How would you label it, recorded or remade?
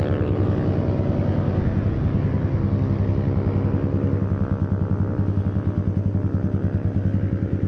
recorded